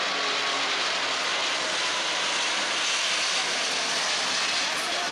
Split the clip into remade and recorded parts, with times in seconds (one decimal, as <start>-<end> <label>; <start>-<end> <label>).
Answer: 0.0-5.1 recorded